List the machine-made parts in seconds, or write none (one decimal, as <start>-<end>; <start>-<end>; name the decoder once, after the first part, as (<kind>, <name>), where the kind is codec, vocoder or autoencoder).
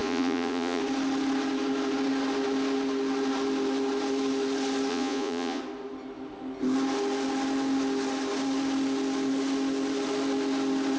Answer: 0.0-0.8 (vocoder, Vocos); 4.9-5.6